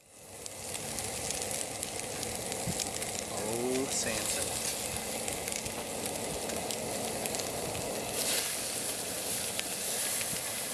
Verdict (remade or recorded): recorded